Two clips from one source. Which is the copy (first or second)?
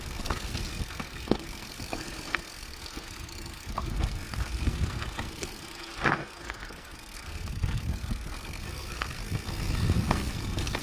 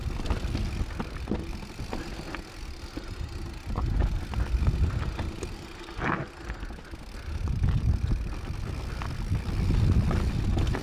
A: first